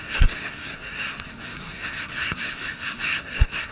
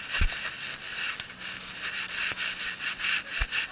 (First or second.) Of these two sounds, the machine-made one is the first